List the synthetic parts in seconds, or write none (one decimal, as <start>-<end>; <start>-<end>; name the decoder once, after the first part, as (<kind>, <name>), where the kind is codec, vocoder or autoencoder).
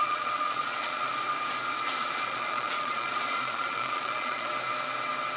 0.0-1.1 (vocoder, Vocos); 2.0-4.5